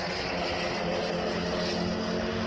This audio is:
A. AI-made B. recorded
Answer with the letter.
B